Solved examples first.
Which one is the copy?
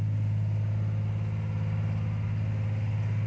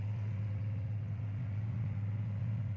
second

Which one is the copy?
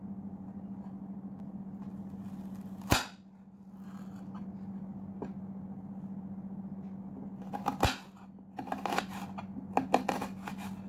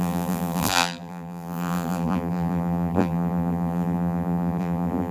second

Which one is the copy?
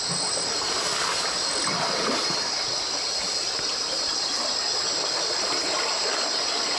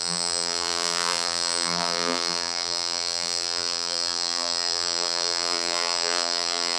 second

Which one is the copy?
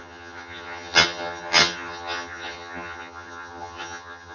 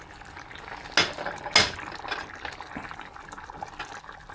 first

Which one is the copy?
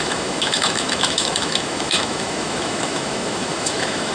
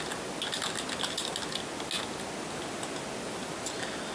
first